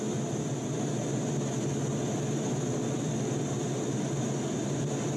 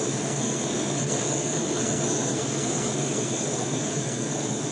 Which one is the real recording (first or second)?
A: first